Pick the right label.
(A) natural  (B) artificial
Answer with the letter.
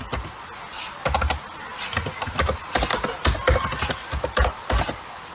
A